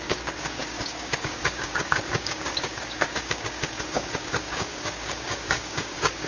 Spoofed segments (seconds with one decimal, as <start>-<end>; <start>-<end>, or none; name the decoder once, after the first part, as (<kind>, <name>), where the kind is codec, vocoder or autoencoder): 0.0-6.3 (codec, DAC)